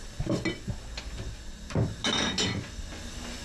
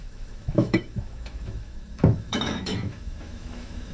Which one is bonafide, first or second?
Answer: first